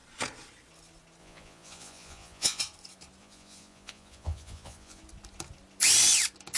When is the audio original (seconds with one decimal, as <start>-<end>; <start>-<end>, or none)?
0.0-1.2; 2.6-3.2; 5.0-6.6